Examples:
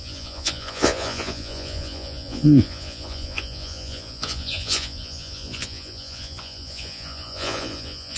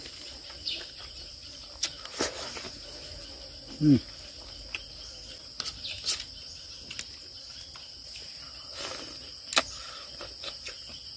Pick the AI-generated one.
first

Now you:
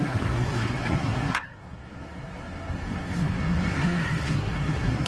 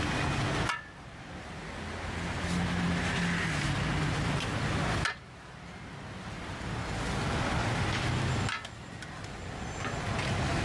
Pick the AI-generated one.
first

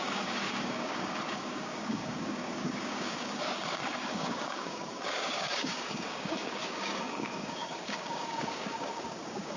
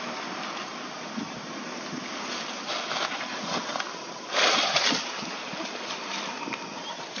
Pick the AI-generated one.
first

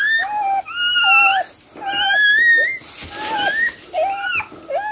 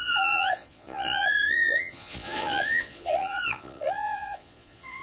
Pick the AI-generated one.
second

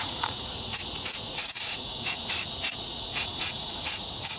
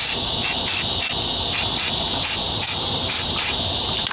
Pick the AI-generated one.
first